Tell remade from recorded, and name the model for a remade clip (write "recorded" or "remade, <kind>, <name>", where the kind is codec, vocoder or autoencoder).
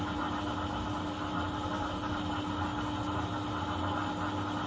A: recorded